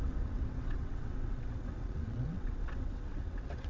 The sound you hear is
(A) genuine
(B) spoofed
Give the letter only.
B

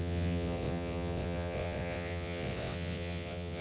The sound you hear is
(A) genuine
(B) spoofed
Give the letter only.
B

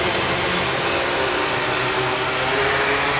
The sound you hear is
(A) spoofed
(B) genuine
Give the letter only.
B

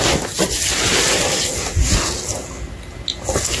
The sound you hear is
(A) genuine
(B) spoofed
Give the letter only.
A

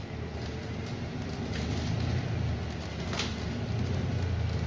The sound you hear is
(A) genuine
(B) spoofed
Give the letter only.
A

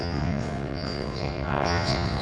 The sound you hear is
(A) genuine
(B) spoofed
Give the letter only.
B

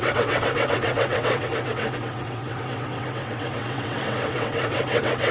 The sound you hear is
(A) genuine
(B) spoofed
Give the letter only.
B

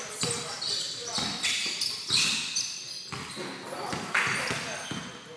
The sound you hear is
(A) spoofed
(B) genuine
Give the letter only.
B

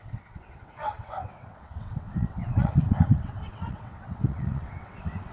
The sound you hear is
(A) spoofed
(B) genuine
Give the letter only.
A